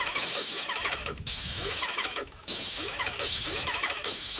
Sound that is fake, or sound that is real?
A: fake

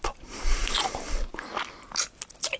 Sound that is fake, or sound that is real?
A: real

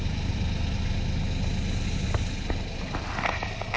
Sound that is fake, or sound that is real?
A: real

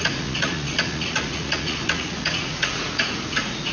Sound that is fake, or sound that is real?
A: fake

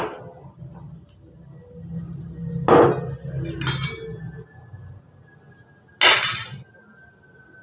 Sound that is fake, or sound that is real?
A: real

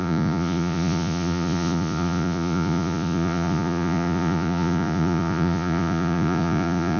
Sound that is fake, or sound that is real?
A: fake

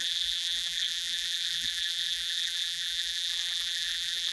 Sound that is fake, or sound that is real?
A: fake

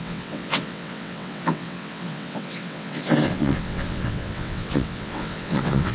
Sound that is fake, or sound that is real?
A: fake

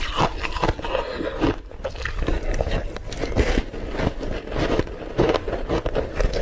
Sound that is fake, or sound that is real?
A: real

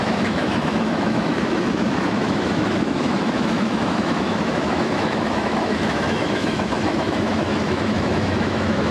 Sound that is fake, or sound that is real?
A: fake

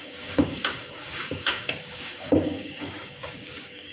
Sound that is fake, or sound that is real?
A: fake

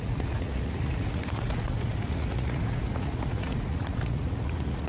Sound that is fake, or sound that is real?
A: fake